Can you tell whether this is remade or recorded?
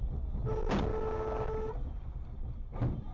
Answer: recorded